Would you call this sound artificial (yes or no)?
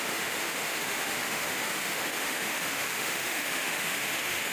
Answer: yes